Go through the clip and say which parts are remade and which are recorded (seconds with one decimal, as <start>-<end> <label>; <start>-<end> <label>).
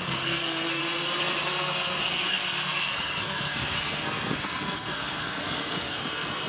0.0-0.8 remade; 0.8-1.4 recorded; 1.4-6.5 remade